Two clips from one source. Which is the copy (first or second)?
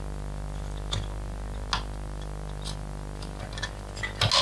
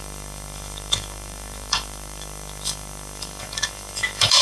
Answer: second